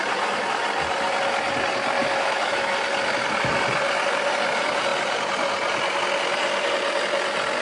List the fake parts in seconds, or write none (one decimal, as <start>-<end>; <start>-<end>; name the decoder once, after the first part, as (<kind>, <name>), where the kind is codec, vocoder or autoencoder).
2.0-2.7 (autoencoder, DAC-VAE)